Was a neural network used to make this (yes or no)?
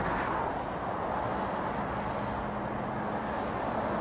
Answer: no